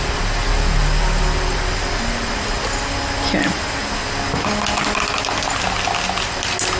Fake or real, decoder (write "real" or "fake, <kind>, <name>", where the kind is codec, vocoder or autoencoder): real